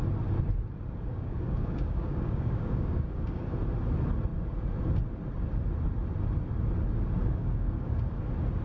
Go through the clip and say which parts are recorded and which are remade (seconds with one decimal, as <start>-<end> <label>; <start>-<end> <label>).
0.0-1.1 recorded; 1.1-3.4 remade; 3.4-7.2 recorded; 7.2-8.0 remade; 8.0-8.6 recorded